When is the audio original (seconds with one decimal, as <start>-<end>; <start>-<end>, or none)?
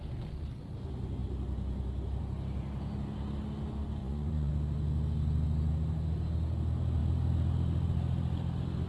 0.0-4.0; 4.5-8.9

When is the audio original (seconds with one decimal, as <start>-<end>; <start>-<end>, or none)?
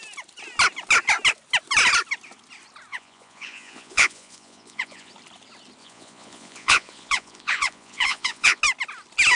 0.0-2.9; 5.1-5.8; 8.6-9.4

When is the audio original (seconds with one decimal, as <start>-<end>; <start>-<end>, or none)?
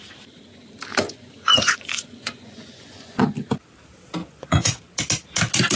0.0-0.9; 3.2-4.2; 4.8-5.8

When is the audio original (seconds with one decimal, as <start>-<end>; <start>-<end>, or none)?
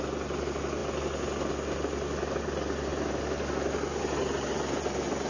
0.0-5.3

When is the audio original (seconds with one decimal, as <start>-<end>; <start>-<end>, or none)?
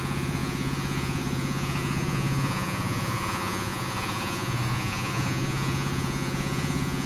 none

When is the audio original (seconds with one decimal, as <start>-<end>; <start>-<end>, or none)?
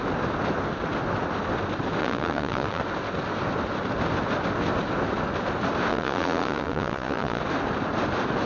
0.0-2.0; 2.8-5.9; 7.4-8.5